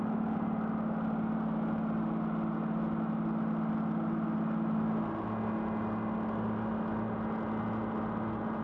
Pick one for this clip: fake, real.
real